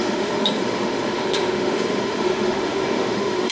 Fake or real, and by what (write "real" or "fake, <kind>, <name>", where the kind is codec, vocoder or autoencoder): fake, autoencoder, DAC-VAE